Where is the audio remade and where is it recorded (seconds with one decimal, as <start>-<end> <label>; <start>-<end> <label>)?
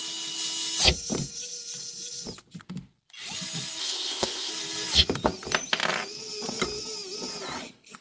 0.0-3.8 recorded; 3.8-4.5 remade; 4.5-8.0 recorded